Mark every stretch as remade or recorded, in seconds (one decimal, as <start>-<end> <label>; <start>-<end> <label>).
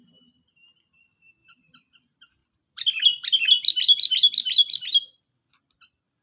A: 0.0-6.2 recorded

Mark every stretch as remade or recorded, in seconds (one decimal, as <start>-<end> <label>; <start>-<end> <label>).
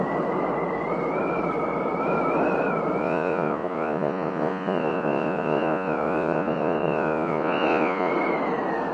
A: 0.0-3.0 recorded; 3.0-8.1 remade; 8.1-8.9 recorded